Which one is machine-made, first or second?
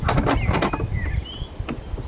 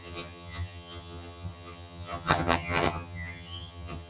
second